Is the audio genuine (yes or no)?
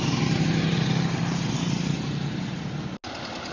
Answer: yes